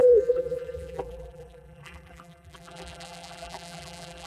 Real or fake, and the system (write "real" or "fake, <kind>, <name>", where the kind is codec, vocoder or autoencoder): fake, vocoder, BigVGAN v2